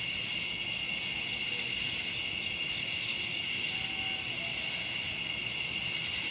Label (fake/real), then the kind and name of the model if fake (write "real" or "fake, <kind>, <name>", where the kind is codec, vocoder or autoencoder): real